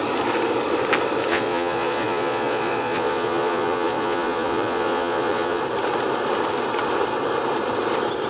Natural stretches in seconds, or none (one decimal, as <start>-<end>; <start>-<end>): 0.0-1.3; 5.6-8.3